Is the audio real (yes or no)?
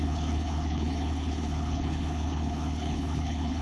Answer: no